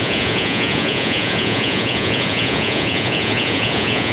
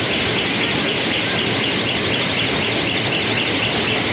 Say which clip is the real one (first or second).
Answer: second